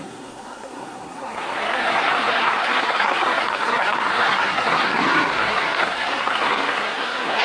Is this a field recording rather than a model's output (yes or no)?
no